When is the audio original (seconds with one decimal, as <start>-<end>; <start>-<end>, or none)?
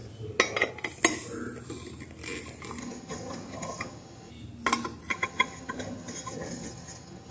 0.0-2.8; 4.3-5.1